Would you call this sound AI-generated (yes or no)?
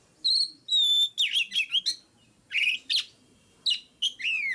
no